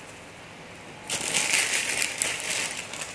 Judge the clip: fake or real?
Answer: real